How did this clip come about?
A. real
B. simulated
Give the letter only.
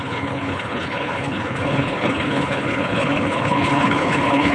B